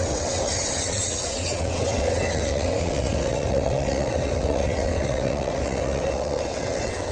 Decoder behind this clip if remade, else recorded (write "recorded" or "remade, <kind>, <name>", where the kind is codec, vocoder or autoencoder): remade, vocoder, WaveNeXt